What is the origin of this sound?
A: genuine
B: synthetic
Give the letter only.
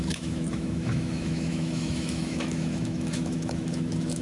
B